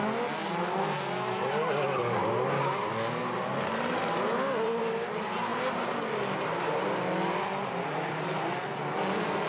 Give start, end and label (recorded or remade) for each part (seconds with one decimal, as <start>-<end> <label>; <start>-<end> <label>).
0.0-9.5 recorded